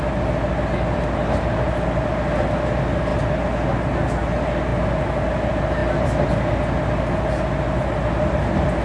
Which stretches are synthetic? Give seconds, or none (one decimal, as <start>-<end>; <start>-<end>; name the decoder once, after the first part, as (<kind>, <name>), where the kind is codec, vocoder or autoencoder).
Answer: none